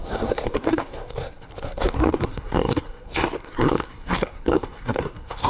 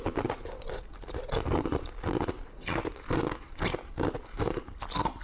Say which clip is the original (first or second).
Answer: second